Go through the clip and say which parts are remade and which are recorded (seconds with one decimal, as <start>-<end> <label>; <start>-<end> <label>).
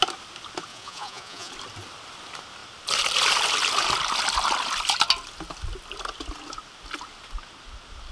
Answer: 0.0-0.7 recorded; 0.7-1.5 remade; 1.5-8.1 recorded